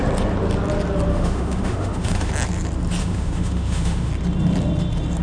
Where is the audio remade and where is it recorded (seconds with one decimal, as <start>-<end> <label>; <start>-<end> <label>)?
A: 0.0-1.1 recorded; 1.1-2.3 remade; 2.3-3.0 recorded; 3.0-4.1 remade; 4.1-5.2 recorded